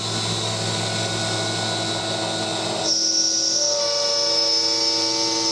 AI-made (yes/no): no